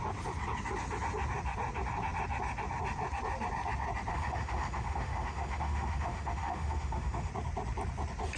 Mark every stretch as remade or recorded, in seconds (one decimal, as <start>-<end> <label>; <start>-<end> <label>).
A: 0.0-4.1 recorded; 4.1-7.3 remade; 7.3-8.4 recorded